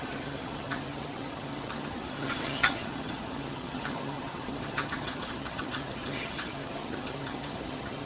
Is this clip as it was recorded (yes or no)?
no